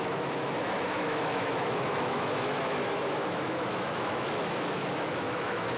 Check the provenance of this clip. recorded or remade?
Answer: remade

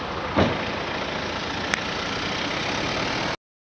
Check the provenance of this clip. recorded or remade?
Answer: recorded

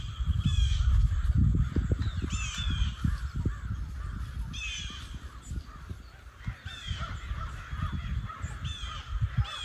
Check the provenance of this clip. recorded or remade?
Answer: recorded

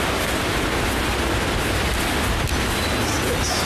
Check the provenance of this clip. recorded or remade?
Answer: recorded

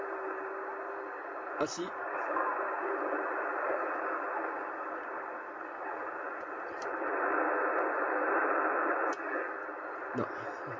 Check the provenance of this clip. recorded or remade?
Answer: recorded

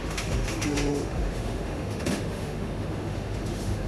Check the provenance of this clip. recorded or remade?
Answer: remade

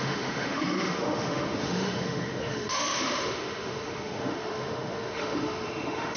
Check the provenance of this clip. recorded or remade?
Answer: remade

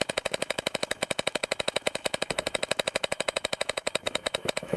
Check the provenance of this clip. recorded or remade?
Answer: remade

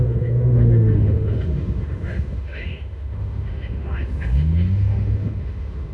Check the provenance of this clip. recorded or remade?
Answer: remade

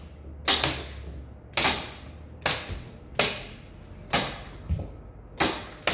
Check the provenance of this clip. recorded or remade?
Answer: recorded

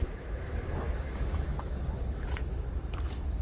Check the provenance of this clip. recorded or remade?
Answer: remade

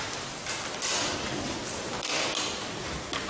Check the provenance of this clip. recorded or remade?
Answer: recorded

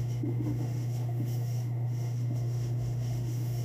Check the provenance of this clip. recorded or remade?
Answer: remade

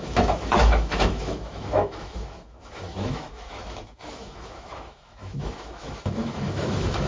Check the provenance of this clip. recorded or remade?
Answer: remade